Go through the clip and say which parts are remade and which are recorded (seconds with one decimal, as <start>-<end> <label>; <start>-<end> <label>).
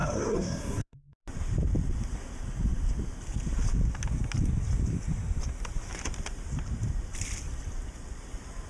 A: 0.0-1.2 remade; 1.2-8.7 recorded